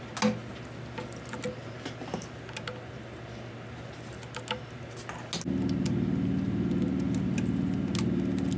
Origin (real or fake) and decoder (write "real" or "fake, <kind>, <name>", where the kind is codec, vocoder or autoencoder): real